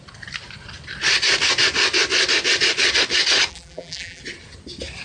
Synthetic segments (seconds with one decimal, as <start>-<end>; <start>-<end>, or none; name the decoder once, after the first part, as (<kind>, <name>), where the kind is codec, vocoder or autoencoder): 3.5-4.2 (vocoder, BigVGAN v2)